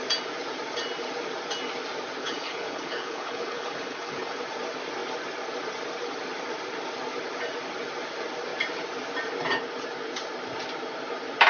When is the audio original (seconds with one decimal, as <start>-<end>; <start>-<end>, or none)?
0.0-2.2; 4.4-11.5